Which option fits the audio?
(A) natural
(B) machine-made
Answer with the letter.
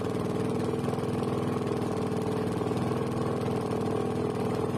A